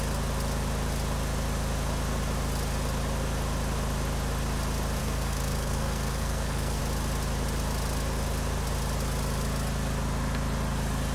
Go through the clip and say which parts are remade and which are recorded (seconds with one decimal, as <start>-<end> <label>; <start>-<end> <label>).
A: 0.0-5.0 recorded; 5.0-6.8 remade; 6.8-11.1 recorded